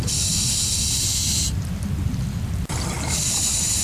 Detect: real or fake real